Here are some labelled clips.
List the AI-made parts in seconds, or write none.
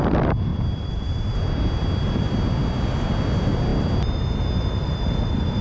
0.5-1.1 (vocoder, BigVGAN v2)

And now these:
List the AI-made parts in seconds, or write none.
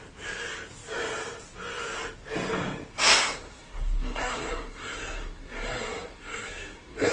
2.9-7.1 (codec, SNAC)